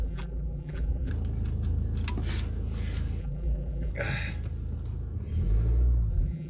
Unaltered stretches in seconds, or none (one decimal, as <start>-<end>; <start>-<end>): 1.1-3.2; 3.9-6.1